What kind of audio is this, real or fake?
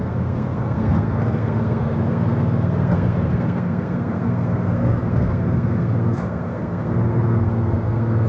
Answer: fake